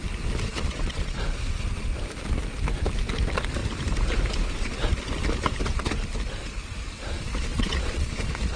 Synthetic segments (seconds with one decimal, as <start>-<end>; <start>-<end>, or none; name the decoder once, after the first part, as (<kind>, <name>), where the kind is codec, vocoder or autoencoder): 0.5-1.2 (vocoder, Vocos); 7.5-8.6